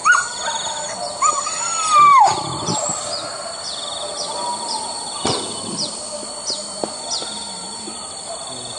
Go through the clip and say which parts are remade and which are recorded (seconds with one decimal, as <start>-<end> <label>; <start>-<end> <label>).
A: 0.0-8.8 recorded